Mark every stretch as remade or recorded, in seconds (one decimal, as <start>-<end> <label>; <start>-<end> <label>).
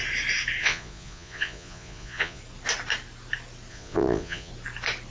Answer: 0.0-0.6 recorded; 0.6-2.4 remade; 2.4-3.7 recorded; 3.7-4.5 remade; 4.5-5.1 recorded